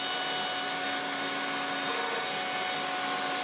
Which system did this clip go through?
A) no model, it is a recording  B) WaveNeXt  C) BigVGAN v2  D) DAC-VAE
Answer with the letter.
A